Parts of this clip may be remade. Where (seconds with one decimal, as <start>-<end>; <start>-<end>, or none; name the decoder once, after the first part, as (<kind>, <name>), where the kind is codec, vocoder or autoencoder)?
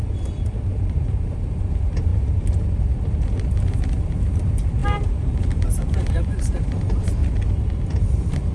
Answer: 0.0-2.1 (vocoder, BigVGAN v2); 4.3-7.2; 8.0-8.5